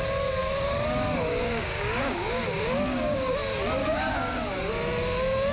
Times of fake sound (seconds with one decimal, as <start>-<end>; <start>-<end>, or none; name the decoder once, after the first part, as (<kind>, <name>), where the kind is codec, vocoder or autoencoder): 0.4-3.3 (codec, DAC); 3.8-4.6